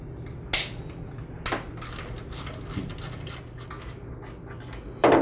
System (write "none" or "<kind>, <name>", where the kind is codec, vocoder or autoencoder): none